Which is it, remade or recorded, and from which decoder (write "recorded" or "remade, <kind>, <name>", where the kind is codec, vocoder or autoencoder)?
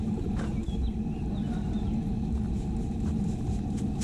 recorded